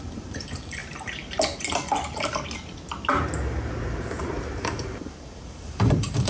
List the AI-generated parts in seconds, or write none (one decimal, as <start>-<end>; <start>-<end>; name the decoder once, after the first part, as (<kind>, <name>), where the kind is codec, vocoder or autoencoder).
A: 0.0-0.8 (vocoder, BigVGAN v2); 4.6-6.3

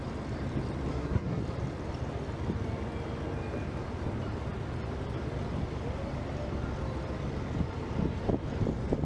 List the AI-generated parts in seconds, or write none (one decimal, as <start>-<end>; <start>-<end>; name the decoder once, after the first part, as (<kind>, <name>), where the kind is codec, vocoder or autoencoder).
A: 0.9-1.4 (codec, SNAC)

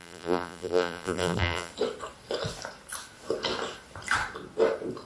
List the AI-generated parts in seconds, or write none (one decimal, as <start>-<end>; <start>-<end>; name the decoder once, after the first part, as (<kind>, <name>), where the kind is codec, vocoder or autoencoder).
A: 0.0-1.7 (vocoder, BigVGAN v2)